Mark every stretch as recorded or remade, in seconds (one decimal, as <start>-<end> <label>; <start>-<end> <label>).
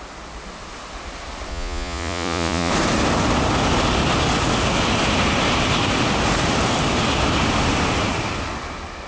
0.0-1.5 recorded; 1.5-2.7 remade; 2.7-9.1 recorded